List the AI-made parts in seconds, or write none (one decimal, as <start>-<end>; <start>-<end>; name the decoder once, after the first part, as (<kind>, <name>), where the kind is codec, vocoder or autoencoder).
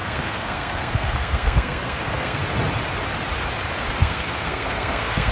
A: 0.0-2.4 (codec, SNAC); 3.9-5.3